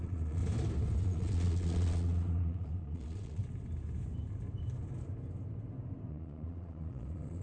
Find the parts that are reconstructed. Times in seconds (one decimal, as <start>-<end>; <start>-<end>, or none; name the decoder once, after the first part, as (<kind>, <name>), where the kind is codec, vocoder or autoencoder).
0.0-0.4 (vocoder, Vocos); 1.0-3.4; 6.1-7.4